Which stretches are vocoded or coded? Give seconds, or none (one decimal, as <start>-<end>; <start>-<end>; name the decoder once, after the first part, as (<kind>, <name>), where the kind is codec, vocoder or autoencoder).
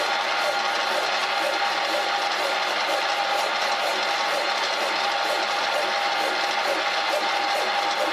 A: none